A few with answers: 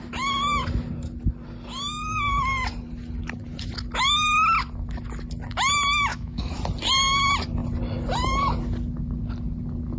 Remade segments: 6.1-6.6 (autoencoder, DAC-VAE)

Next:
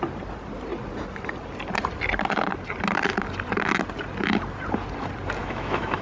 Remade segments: 5.4-6.0 (autoencoder, DAC-VAE)

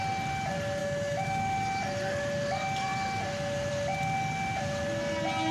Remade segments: 0.8-1.8 (autoencoder, DAC-VAE)

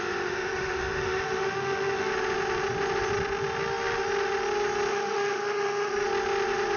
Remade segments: 0.0-2.1 (autoencoder, DAC-VAE); 4.9-5.9

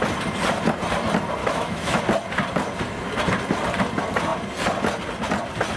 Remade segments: 1.4-2.0 (autoencoder, DAC-VAE)

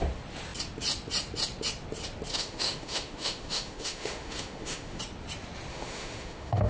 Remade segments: 2.3-5.0 (autoencoder, DAC-VAE); 5.7-6.7

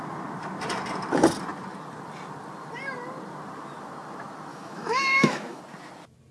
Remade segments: 4.5-5.6 (autoencoder, DAC-VAE)